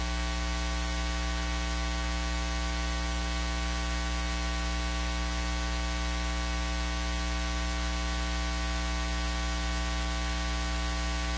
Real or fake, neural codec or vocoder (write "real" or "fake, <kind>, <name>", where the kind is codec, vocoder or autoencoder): real